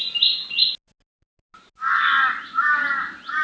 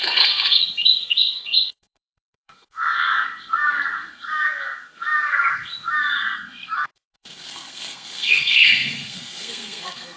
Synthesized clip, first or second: second